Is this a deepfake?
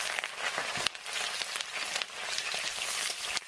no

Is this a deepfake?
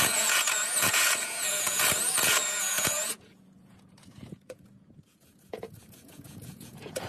yes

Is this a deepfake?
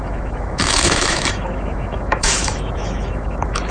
yes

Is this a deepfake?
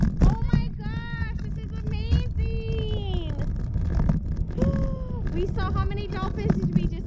no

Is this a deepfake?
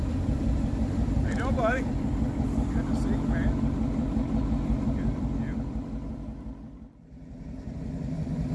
yes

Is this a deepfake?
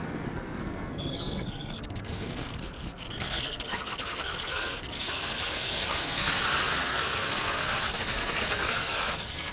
yes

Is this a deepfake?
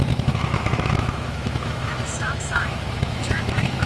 yes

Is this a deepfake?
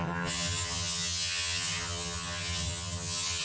yes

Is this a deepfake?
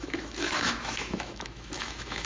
yes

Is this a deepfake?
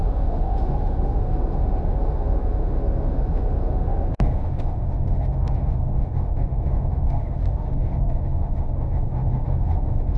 yes